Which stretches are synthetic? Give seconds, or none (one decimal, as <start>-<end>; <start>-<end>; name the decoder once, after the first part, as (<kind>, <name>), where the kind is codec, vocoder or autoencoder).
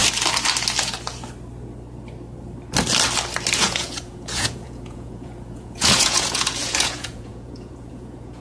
3.6-8.4 (vocoder, Vocos)